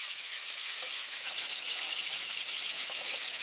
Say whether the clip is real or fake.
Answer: fake